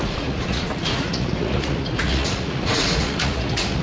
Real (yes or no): no